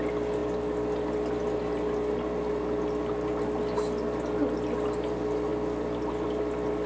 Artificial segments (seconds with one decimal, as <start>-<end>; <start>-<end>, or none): none